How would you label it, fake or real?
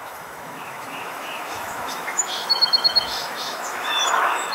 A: fake